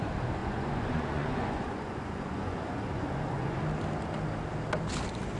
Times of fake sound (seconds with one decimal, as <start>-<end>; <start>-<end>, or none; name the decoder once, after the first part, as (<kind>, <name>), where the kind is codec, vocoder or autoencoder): 0.4-3.6 (vocoder, Vocos)